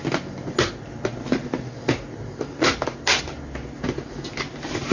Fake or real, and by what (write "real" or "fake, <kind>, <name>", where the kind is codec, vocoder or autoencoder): real